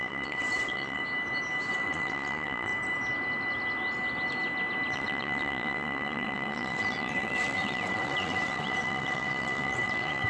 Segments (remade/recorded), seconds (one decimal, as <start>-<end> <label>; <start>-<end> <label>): 0.0-1.0 remade; 1.0-1.7 recorded; 1.7-2.7 remade; 2.7-4.9 recorded; 4.9-10.3 remade